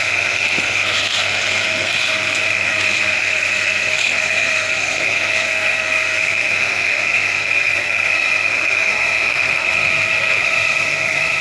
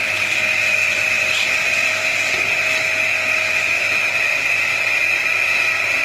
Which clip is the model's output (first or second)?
first